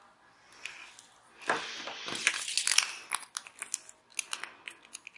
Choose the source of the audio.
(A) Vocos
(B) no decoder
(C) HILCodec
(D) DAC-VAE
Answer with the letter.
B